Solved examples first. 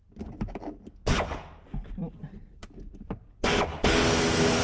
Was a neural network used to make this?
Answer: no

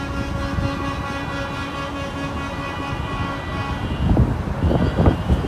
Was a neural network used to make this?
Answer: no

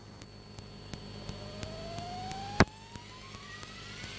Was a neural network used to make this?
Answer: no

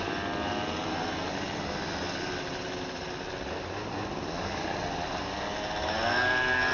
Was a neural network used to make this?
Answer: no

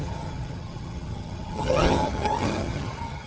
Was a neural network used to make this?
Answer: yes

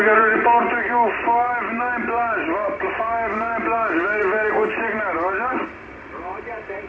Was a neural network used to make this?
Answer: no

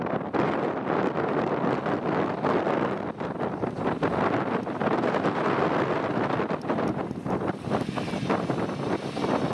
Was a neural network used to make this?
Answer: no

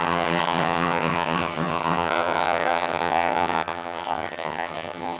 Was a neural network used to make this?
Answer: yes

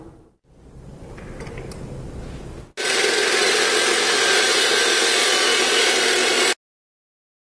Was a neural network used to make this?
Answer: no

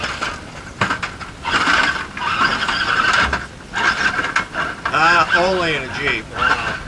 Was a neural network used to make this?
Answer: no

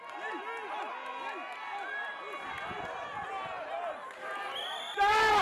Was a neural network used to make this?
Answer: no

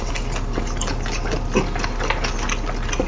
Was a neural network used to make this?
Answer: no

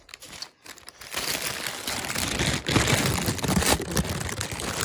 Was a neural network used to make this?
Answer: no